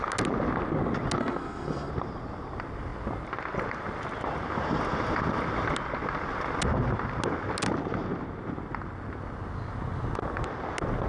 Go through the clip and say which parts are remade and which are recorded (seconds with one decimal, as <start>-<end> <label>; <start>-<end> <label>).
0.0-1.2 recorded; 1.2-1.9 remade; 1.9-11.1 recorded